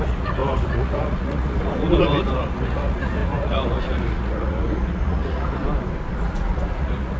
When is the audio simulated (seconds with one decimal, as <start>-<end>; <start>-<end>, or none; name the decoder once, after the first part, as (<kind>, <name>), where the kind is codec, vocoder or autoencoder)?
0.0-5.6 (vocoder, Vocos); 6.2-7.2

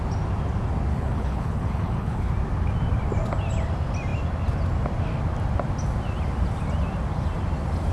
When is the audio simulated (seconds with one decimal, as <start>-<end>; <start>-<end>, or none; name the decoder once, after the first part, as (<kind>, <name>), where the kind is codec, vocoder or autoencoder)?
0.9-2.3 (codec, HILCodec)